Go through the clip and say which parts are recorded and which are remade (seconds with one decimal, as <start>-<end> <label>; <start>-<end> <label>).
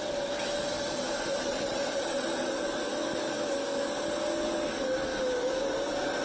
0.0-2.9 recorded; 2.9-3.9 remade; 3.9-5.1 recorded; 5.1-5.6 remade; 5.6-6.2 recorded